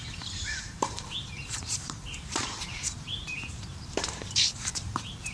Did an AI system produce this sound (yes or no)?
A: yes